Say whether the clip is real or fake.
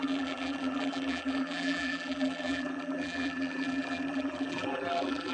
fake